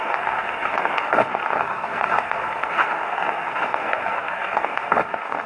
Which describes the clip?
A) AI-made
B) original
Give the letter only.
A